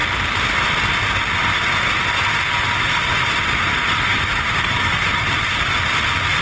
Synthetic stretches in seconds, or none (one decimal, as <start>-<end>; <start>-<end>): 4.1-4.9